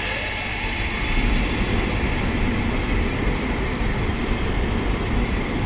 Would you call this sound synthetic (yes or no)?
yes